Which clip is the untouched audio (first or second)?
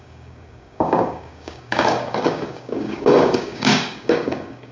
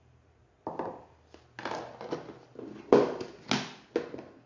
second